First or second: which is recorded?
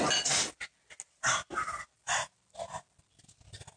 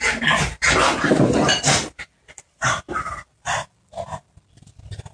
first